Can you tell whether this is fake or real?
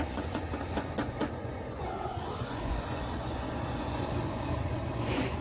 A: fake